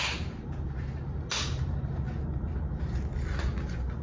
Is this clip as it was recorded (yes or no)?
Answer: yes